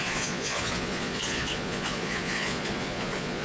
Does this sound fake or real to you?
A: fake